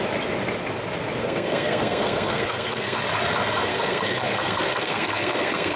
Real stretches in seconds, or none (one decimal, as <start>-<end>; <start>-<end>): 0.0-1.2; 3.0-3.7

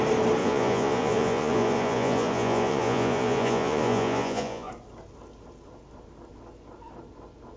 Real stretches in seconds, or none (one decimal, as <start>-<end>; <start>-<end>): 0.0-0.4; 4.7-7.6